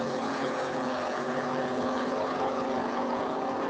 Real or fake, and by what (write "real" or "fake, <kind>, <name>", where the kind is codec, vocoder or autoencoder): fake, codec, HILCodec